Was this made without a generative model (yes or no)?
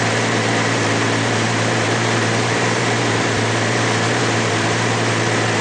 no